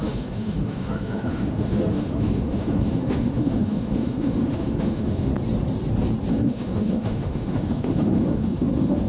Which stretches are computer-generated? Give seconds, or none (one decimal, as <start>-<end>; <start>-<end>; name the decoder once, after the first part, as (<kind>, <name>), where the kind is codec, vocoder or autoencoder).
0.0-5.3 (autoencoder, DAC-VAE); 6.3-9.1